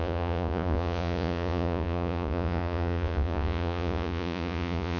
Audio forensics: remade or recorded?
remade